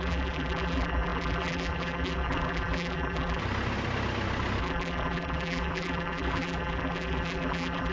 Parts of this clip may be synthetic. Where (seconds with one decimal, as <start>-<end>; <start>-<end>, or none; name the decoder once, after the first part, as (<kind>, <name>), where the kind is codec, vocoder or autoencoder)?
0.0-3.4 (vocoder, BigVGAN v2); 4.6-7.9